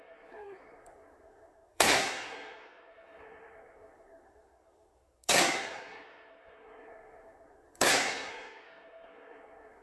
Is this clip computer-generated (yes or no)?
yes